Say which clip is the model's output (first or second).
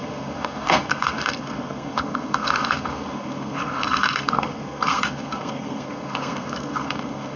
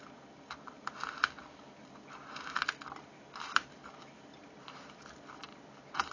first